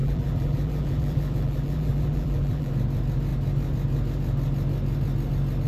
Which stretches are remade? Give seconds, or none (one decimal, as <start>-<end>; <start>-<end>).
0.0-2.7